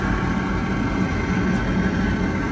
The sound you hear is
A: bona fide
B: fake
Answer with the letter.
A